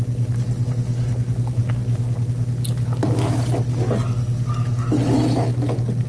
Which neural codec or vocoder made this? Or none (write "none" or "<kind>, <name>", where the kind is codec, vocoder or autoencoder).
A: none